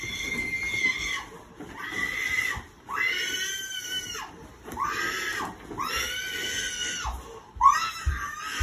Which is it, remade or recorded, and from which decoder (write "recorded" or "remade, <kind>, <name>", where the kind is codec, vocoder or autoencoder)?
recorded